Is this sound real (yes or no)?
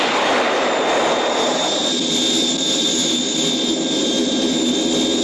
yes